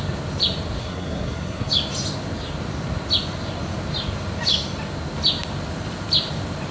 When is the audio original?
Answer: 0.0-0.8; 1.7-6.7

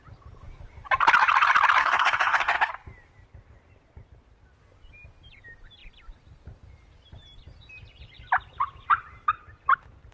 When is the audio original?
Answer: 0.0-1.8; 2.7-10.1

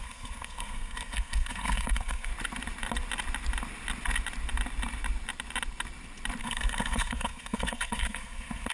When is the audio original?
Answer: 2.3-6.4

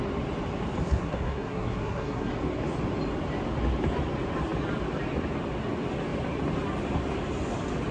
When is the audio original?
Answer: 0.0-0.8; 2.3-7.9

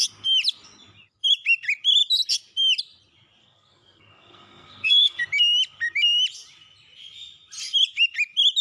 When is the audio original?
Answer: 0.0-3.4; 5.2-8.6